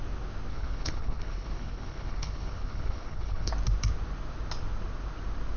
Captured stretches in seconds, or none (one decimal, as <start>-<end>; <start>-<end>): 0.0-0.5; 3.5-5.6